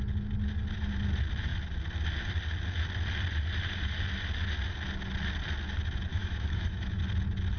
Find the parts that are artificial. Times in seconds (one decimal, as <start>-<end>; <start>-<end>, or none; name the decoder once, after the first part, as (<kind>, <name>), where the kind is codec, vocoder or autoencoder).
6.1-7.0 (autoencoder, DAC-VAE)